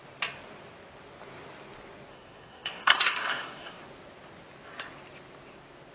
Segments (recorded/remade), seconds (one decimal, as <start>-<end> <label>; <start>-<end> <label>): 0.0-2.1 recorded; 2.1-3.8 remade; 3.8-5.9 recorded